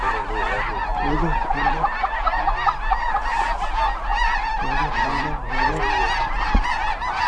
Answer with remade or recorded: recorded